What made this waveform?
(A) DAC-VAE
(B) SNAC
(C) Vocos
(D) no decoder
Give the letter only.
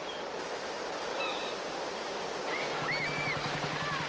D